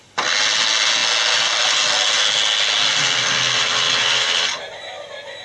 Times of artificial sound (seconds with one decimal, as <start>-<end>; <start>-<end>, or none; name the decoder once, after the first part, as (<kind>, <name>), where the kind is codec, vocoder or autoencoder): none